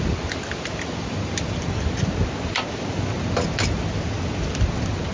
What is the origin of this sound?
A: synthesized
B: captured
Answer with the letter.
B